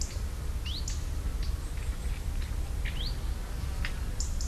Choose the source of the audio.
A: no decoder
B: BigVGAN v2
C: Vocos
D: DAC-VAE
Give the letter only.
A